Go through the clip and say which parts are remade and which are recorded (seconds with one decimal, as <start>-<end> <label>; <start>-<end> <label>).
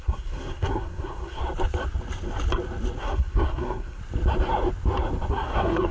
0.0-1.4 remade; 1.4-3.0 recorded; 3.0-4.0 remade; 4.0-5.3 recorded; 5.3-5.9 remade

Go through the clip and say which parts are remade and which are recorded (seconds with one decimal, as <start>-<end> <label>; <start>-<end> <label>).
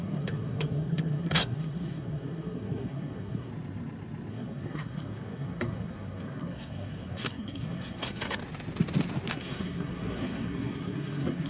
0.0-3.5 remade; 3.5-4.3 recorded; 4.3-8.4 remade; 8.4-9.3 recorded; 9.3-11.5 remade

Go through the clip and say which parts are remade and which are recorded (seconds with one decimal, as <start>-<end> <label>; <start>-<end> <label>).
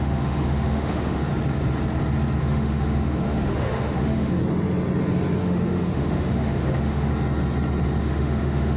0.0-1.3 remade; 1.3-2.4 recorded; 2.4-4.4 remade; 4.4-5.4 recorded; 5.4-7.1 remade; 7.1-8.0 recorded; 8.0-8.8 remade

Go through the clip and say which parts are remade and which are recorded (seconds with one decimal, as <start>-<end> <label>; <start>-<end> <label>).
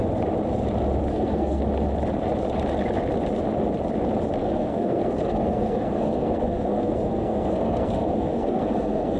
0.0-1.1 recorded; 1.1-1.6 remade; 1.6-4.4 recorded; 4.4-9.2 remade